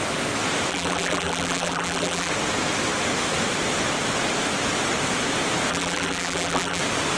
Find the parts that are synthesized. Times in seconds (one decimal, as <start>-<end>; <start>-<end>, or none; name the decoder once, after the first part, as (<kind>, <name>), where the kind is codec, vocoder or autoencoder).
0.7-2.3 (vocoder, BigVGAN v2); 5.7-6.8